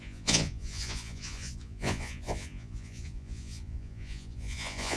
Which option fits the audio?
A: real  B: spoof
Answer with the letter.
B